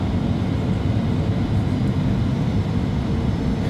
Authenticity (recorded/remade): recorded